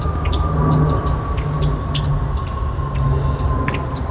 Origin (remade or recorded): recorded